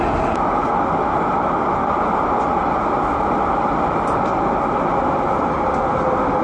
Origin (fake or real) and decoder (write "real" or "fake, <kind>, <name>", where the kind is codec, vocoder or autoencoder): real